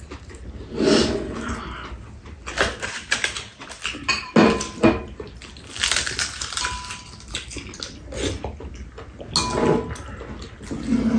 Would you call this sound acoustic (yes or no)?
yes